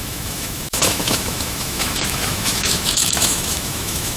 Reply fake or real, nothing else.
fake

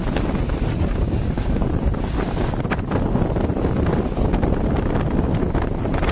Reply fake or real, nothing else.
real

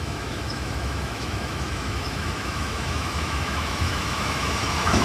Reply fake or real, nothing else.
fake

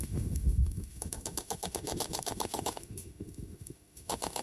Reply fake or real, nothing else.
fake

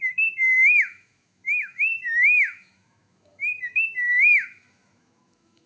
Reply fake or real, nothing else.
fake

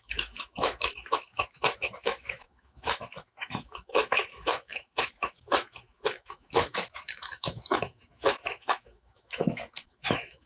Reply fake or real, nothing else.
fake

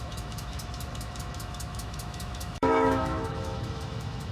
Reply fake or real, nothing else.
fake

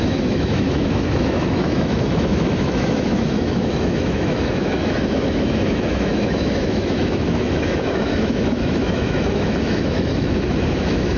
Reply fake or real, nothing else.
fake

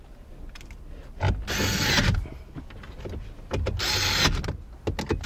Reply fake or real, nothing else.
real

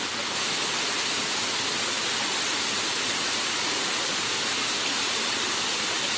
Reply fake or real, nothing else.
real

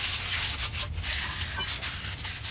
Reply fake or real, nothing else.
real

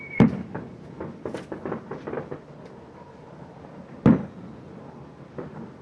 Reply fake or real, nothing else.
real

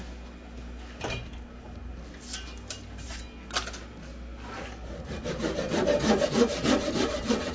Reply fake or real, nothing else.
real